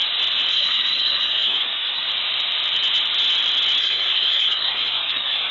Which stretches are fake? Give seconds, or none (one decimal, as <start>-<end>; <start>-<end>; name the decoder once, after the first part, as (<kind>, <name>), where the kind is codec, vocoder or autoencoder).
0.5-2.1 (codec, SNAC); 3.8-5.5